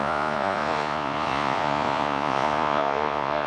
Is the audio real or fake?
fake